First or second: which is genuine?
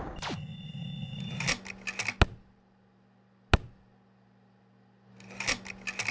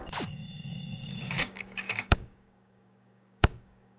first